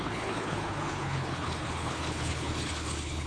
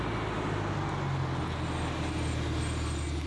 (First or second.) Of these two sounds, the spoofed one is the first